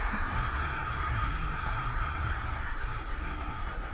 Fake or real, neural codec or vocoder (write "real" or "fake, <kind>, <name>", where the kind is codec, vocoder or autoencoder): fake, codec, SNAC